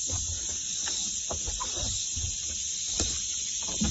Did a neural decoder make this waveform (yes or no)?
no